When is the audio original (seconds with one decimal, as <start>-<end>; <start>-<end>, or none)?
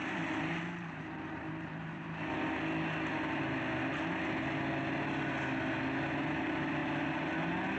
2.3-6.8; 7.3-7.8